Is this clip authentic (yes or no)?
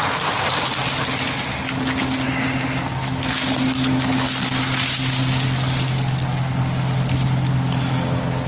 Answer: yes